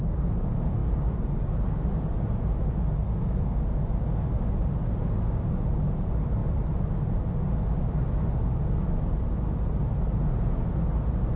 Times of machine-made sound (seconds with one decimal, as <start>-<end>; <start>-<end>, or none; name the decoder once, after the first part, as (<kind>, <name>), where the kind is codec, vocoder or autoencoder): 0.8-2.1 (vocoder, BigVGAN v2); 6.4-7.2